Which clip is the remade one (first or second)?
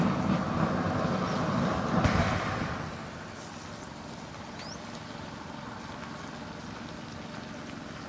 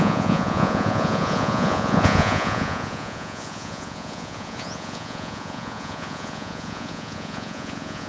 second